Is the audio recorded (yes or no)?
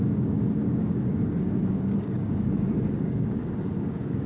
no